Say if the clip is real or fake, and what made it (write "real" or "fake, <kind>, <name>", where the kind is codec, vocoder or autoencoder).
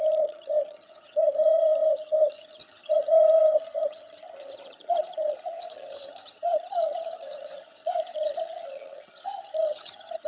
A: fake, vocoder, HiFi-GAN